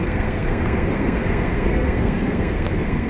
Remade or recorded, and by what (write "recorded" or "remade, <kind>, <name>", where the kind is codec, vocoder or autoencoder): remade, codec, SNAC